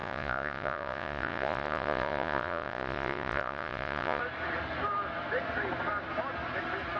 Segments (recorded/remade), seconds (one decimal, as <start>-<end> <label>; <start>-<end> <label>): 0.0-4.2 remade; 4.2-7.0 recorded